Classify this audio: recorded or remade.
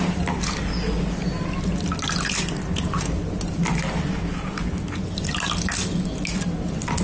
recorded